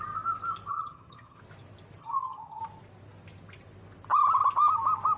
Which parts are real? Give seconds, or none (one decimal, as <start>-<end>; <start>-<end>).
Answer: 0.0-0.7; 1.4-2.0; 2.6-5.2